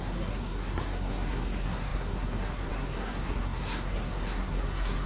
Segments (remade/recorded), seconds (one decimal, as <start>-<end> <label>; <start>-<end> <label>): 0.0-5.1 remade